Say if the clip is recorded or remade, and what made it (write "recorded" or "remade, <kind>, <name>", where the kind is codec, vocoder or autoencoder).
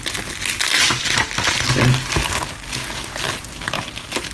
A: recorded